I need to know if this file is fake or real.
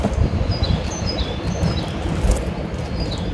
real